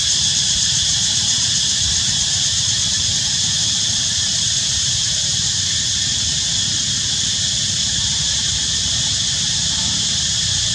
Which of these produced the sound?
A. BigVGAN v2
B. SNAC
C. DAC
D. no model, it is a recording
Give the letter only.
A